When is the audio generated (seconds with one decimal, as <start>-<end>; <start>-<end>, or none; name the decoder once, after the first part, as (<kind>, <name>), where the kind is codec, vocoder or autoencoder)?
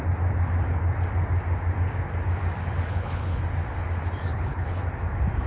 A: 2.9-3.4 (codec, HILCodec); 4.3-4.8